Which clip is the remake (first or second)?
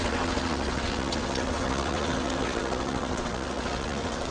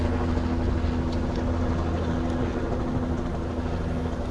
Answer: first